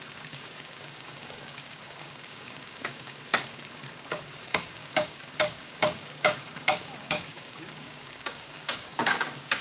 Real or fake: fake